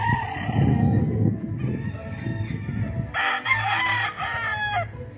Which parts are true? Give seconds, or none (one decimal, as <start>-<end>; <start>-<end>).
0.0-0.7; 1.5-3.2; 3.8-5.2